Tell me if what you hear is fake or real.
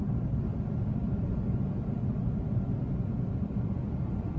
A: fake